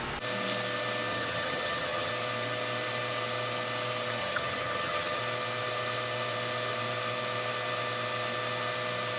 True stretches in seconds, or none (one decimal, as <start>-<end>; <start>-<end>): 0.0-1.1; 2.1-4.2; 5.2-9.2